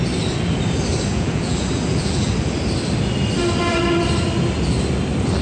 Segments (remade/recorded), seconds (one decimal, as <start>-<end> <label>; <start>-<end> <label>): 0.0-1.1 recorded; 1.1-2.3 remade; 2.3-5.4 recorded